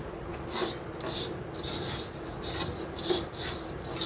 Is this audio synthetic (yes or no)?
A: no